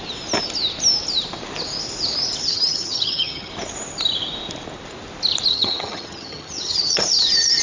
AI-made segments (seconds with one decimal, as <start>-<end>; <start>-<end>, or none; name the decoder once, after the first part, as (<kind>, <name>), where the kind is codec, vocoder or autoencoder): 2.4-3.5 (vocoder, HiFi-GAN); 5.5-7.6

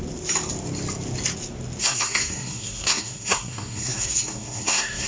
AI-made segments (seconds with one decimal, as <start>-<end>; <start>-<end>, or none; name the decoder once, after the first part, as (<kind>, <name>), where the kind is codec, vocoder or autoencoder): 1.8-5.1 (codec, SNAC)

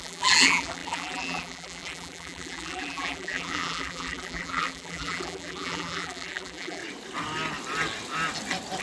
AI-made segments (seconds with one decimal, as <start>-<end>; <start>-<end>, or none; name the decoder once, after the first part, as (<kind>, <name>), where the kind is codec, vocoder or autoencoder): 0.0-6.8 (vocoder, BigVGAN v2)

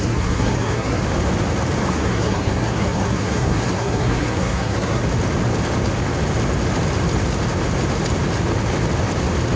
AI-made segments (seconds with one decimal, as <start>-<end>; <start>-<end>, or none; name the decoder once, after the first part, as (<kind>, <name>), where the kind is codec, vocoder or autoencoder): 0.0-1.0 (codec, SNAC); 1.9-5.0

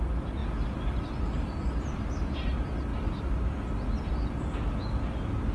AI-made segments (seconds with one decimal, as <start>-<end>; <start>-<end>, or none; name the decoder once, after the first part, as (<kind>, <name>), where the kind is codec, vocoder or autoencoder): none

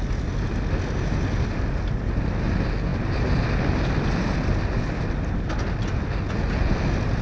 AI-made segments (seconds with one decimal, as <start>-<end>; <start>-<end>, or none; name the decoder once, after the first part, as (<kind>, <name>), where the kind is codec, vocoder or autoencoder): none

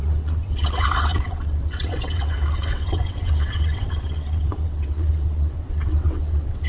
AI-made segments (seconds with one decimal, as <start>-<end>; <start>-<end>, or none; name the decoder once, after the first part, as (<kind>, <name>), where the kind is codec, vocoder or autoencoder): 0.0-6.7 (vocoder, WaveNeXt)

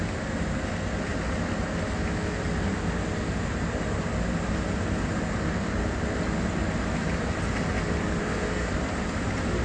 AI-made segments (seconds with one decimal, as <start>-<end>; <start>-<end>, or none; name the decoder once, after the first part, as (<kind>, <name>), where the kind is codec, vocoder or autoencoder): 8.2-8.7 (codec, SNAC)